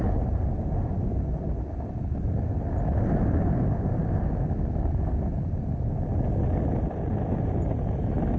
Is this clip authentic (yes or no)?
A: yes